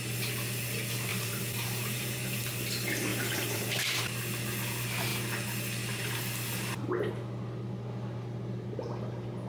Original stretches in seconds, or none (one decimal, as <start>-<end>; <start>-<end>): 0.0-1.1; 2.5-3.1; 4.0-9.5